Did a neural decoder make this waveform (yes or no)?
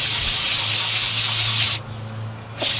no